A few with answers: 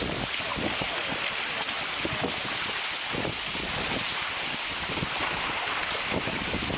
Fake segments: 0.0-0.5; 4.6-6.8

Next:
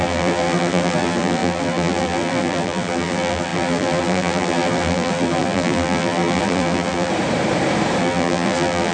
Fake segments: 0.0-7.1; 8.0-8.9

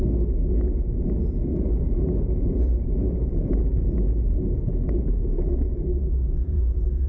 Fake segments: 1.5-5.8

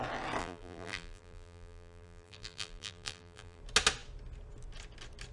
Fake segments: 0.4-3.6

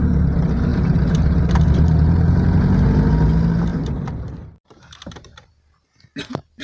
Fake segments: 0.7-1.4; 3.7-5.5